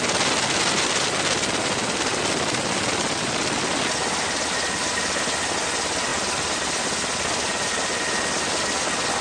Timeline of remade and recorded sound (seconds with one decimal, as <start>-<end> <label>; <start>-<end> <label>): 0.0-9.2 recorded